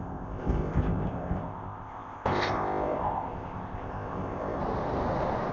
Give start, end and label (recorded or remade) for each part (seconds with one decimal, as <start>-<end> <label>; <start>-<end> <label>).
0.0-4.6 remade; 4.6-5.5 recorded